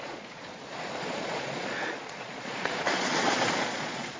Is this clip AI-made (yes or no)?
yes